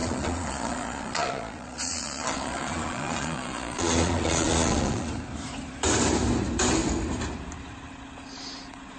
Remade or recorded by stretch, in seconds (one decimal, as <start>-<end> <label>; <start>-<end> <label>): 0.0-5.1 remade; 5.1-9.0 recorded